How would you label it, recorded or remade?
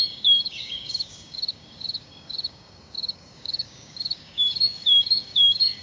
remade